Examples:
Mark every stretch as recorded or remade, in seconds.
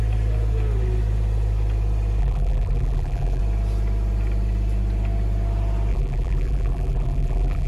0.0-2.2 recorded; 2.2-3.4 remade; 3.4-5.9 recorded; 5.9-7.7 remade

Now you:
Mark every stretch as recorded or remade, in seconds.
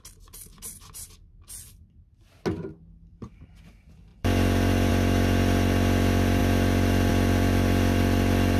0.0-4.1 recorded; 4.1-4.9 remade; 4.9-8.6 recorded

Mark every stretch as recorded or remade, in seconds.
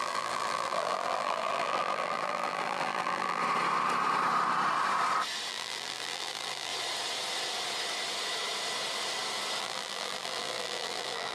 0.0-3.4 remade; 3.4-5.5 recorded; 5.5-6.7 remade; 6.7-9.6 recorded; 9.6-11.3 remade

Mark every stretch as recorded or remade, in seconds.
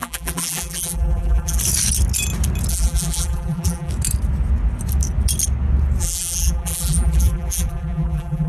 0.0-1.6 remade; 1.6-2.7 recorded; 2.7-3.9 remade; 3.9-6.0 recorded; 6.0-8.5 remade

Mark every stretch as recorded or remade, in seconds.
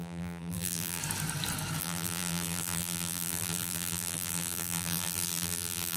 0.0-1.0 remade; 1.0-1.8 recorded; 1.8-6.0 remade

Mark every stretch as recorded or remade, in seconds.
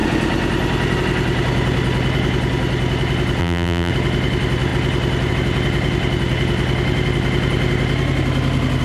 0.0-3.4 recorded; 3.4-3.9 remade; 3.9-8.8 recorded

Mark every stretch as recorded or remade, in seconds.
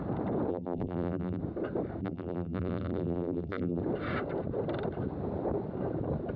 0.0-0.5 recorded; 0.5-1.4 remade; 1.4-2.0 recorded; 2.0-3.8 remade; 3.8-6.4 recorded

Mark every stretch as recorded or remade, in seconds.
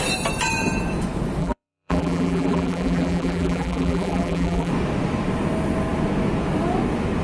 0.0-1.4 recorded; 1.4-4.7 remade; 4.7-7.2 recorded